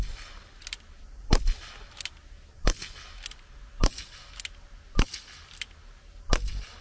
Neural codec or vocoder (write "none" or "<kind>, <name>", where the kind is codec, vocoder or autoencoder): none